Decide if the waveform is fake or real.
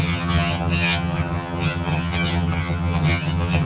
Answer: fake